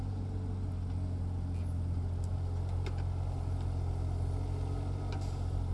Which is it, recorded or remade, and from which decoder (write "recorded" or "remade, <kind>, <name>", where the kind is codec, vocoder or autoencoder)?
recorded